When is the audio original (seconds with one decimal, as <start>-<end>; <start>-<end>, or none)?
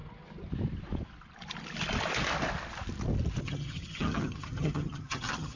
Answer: 0.0-3.4